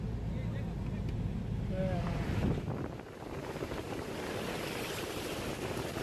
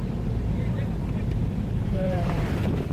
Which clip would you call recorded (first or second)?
first